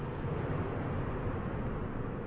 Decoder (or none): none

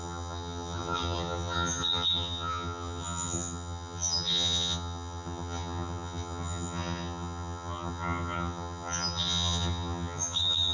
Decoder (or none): vocoder, HiFi-GAN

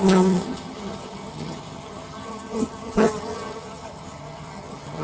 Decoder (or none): vocoder, HiFi-GAN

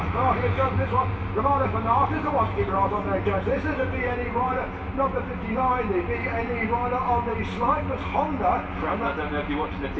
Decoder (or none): none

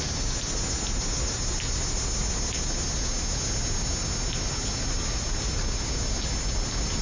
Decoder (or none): none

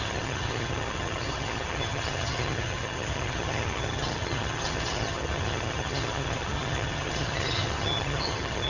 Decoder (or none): vocoder, HiFi-GAN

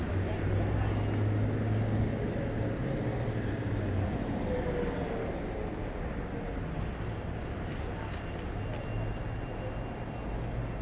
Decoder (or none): none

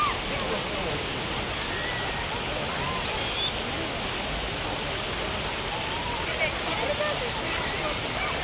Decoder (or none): none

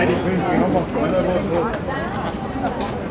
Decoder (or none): none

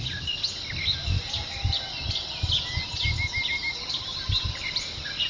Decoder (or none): none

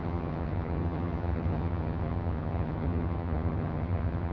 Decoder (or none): vocoder, HiFi-GAN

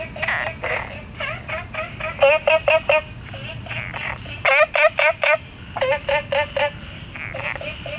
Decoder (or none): none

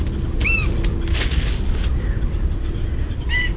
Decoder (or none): none